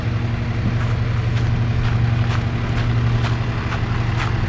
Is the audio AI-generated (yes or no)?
no